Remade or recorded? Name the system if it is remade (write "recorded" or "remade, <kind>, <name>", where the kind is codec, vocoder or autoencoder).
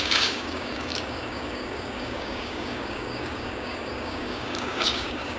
remade, codec, DAC